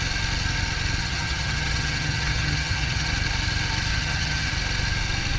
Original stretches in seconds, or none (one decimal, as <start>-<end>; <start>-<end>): 0.0-1.0; 3.1-3.9; 4.5-5.4